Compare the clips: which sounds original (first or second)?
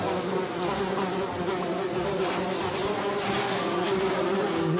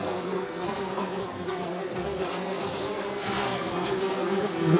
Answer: first